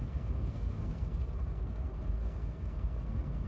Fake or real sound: fake